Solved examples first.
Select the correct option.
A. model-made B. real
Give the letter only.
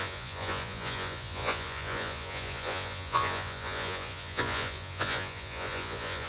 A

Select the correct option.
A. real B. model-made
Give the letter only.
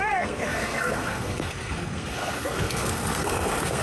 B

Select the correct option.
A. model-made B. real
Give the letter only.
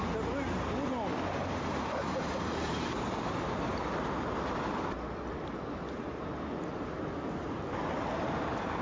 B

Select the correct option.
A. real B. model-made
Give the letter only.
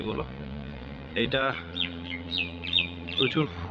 B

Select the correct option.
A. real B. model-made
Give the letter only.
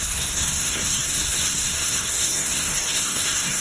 B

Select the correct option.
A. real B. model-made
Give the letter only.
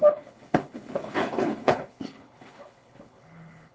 B